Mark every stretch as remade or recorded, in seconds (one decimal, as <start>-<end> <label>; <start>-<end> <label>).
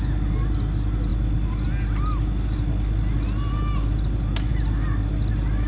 0.0-5.7 recorded